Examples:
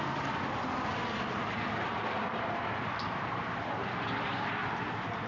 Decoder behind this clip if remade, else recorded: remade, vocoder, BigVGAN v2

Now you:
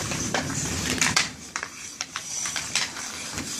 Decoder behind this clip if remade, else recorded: remade, vocoder, BigVGAN v2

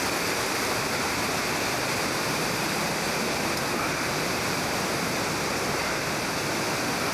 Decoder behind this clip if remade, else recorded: recorded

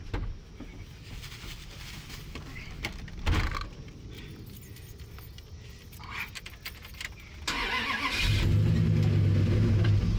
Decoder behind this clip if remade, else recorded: recorded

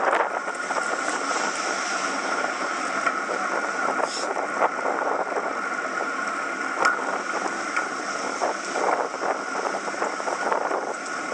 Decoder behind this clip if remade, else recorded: recorded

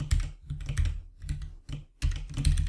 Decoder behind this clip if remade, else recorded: recorded